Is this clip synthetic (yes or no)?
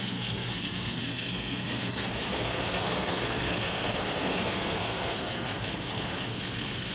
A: yes